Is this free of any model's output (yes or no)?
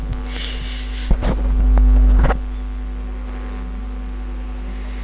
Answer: yes